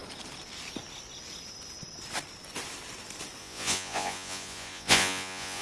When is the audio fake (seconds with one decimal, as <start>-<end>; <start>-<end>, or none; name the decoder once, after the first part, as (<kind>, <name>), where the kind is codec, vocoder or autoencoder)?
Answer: 3.4-5.6 (vocoder, Vocos)